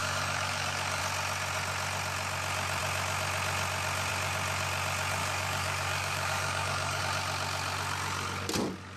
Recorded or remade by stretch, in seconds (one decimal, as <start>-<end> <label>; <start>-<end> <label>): 0.0-1.0 remade; 1.0-5.2 recorded; 5.2-7.0 remade; 7.0-9.0 recorded